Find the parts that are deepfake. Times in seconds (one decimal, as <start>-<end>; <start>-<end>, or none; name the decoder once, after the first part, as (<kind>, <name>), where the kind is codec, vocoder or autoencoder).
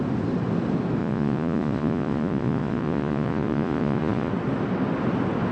1.0-4.3 (vocoder, Vocos)